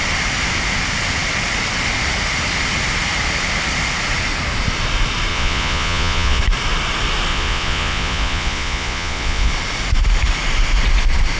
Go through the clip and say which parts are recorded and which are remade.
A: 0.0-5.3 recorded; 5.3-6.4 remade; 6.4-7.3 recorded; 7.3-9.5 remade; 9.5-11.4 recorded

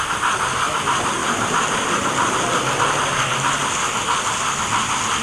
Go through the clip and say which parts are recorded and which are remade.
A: 0.0-1.2 recorded; 1.2-2.3 remade; 2.3-5.2 recorded

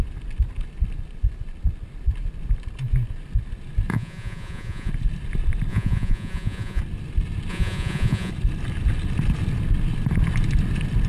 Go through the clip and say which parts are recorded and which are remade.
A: 0.0-3.9 recorded; 3.9-4.9 remade; 4.9-5.7 recorded; 5.7-6.8 remade; 6.8-7.5 recorded; 7.5-8.3 remade; 8.3-11.1 recorded

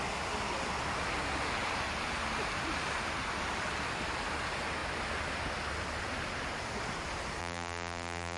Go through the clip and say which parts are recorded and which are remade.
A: 0.0-7.4 recorded; 7.4-8.4 remade

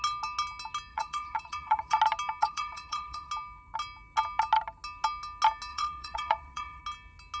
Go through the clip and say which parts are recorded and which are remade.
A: 0.0-0.9 recorded; 0.9-2.0 remade; 2.0-2.4 recorded; 2.4-3.3 remade; 3.3-5.7 recorded; 5.7-6.8 remade; 6.8-7.4 recorded

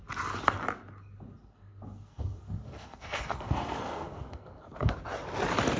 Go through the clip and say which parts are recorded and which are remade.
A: 0.0-1.4 recorded; 1.4-4.9 remade; 4.9-5.8 recorded